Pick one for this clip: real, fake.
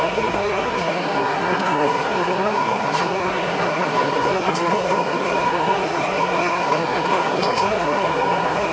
fake